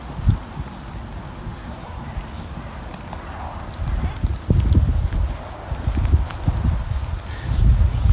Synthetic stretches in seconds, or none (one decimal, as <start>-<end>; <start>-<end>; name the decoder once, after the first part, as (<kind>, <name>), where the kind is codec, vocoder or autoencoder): 1.4-2.0 (codec, SNAC)